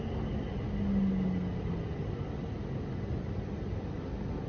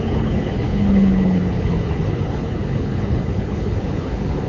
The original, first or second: first